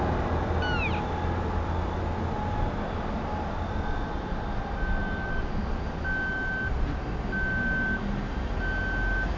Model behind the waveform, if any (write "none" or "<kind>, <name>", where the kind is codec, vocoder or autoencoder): none